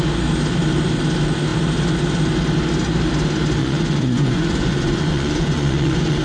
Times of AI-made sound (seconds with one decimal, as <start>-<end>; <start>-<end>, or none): 3.6-6.2